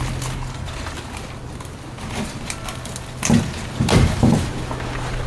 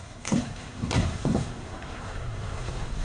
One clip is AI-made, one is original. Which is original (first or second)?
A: first